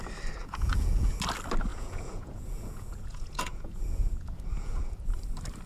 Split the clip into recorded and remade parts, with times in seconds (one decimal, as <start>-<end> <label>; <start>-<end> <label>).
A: 0.0-0.4 recorded; 0.4-1.1 remade; 1.1-1.7 recorded; 1.7-5.1 remade; 5.1-5.7 recorded